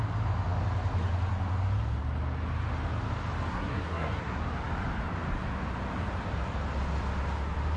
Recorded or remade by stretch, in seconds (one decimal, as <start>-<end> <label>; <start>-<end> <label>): 0.0-3.5 recorded; 3.5-4.4 remade; 4.4-7.8 recorded

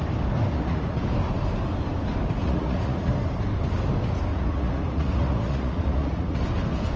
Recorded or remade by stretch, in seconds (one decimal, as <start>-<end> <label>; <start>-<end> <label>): 0.0-0.5 recorded; 0.5-1.0 remade; 1.0-2.4 recorded; 2.4-3.1 remade; 3.1-4.3 recorded; 4.3-6.4 remade; 6.4-7.0 recorded

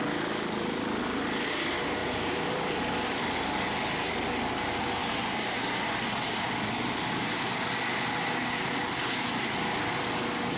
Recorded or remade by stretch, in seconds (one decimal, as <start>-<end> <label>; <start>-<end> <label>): 0.0-2.0 recorded; 2.0-2.7 remade; 2.7-5.0 recorded; 5.0-5.6 remade; 5.6-10.6 recorded

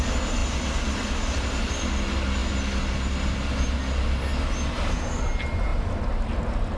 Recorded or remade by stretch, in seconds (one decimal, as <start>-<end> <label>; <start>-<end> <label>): 0.0-6.8 recorded

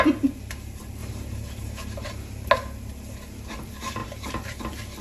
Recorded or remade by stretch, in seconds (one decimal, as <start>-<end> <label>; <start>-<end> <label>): 0.0-1.0 recorded; 1.0-2.5 remade; 2.5-4.0 recorded; 4.0-4.6 remade; 4.6-5.0 recorded

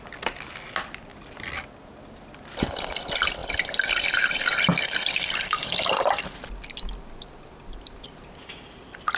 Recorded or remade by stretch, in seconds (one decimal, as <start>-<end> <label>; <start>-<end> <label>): 0.0-1.1 recorded; 1.1-1.8 remade; 1.8-3.4 recorded; 3.4-4.2 remade; 4.2-4.7 recorded; 4.7-6.3 remade; 6.3-9.2 recorded

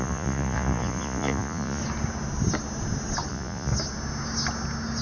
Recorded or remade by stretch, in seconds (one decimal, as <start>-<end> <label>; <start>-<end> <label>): 0.0-1.8 remade; 1.8-3.3 recorded; 3.3-3.7 remade; 3.7-5.0 recorded